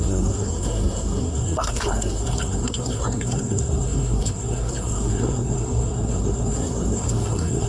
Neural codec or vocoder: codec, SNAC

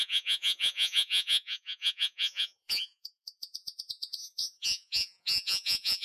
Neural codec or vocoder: vocoder, Vocos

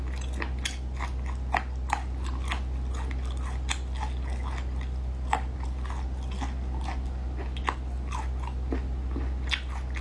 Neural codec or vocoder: none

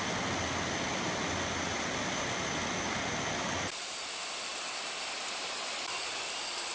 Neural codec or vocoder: none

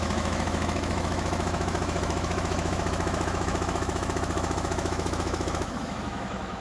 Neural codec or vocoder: autoencoder, DAC-VAE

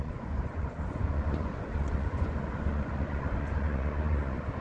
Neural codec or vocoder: vocoder, Vocos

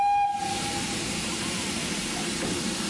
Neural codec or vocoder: none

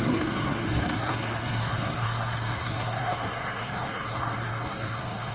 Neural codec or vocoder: codec, SNAC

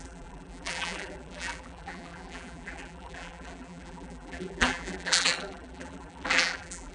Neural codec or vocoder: vocoder, BigVGAN v2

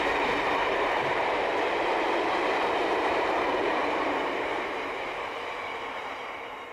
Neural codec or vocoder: vocoder, BigVGAN v2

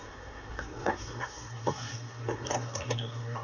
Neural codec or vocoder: codec, SNAC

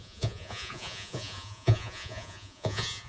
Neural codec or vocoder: vocoder, Vocos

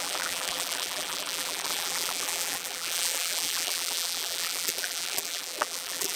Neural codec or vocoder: vocoder, BigVGAN v2